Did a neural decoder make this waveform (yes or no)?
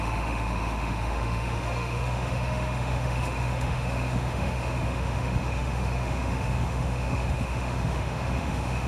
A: yes